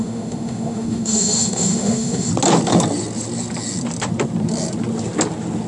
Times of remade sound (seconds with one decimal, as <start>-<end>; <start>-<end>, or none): 0.0-2.3